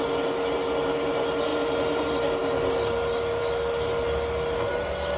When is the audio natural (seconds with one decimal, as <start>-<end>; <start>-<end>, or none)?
0.0-5.2